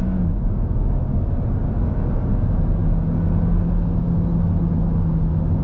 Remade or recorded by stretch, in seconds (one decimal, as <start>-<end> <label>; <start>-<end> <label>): 0.0-5.6 recorded